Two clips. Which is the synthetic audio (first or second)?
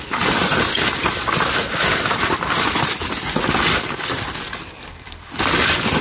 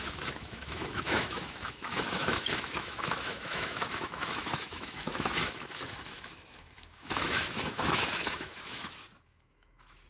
second